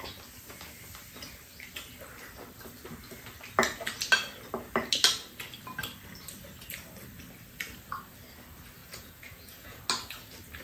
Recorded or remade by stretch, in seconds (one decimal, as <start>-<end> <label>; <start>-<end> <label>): 0.0-8.8 recorded; 8.8-9.8 remade; 9.8-10.6 recorded